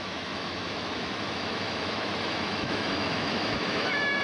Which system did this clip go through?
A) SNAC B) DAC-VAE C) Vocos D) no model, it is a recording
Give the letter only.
B